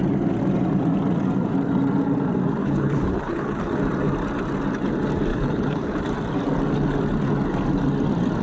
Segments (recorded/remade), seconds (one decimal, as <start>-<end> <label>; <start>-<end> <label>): 0.0-2.6 recorded; 2.6-3.7 remade; 3.7-5.3 recorded; 5.3-6.0 remade; 6.0-8.4 recorded